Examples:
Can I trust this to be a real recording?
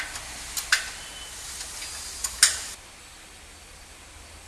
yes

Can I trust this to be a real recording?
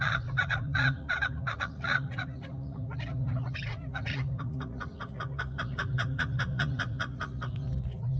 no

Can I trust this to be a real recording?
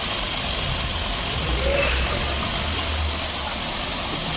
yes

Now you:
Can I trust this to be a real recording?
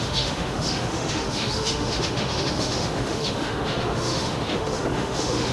no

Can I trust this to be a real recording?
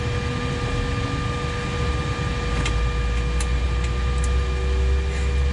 yes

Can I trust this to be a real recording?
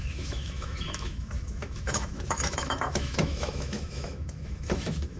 no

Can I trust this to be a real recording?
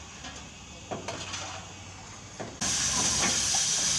yes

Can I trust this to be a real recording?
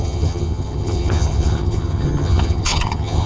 no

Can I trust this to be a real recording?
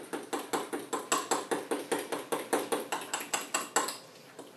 yes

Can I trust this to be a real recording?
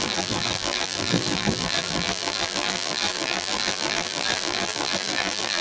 no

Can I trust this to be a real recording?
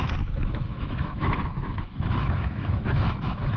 no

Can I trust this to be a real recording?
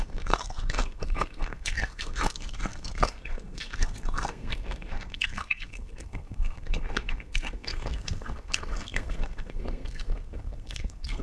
no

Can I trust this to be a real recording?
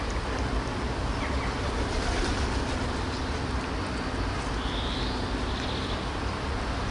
yes